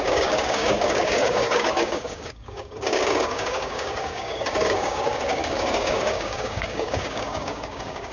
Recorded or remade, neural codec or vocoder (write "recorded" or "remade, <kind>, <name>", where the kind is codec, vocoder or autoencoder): remade, codec, DAC